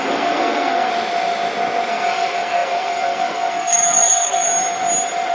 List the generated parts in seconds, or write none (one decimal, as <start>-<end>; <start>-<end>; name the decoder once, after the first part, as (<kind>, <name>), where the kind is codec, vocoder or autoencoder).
0.0-0.9 (codec, SNAC); 1.9-4.5

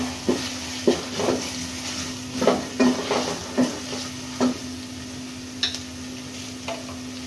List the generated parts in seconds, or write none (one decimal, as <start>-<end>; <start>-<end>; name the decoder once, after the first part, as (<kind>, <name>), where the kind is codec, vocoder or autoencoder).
none

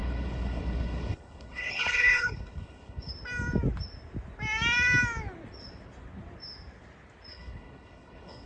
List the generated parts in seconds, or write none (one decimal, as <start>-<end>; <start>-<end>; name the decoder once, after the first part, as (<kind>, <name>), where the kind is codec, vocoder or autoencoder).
0.0-3.1 (codec, HILCodec); 7.3-8.5

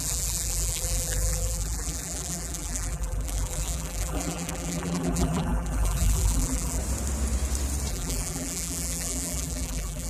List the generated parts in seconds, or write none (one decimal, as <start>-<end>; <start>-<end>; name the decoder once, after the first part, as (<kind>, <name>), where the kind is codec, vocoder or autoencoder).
0.0-6.8 (vocoder, BigVGAN v2); 7.9-10.1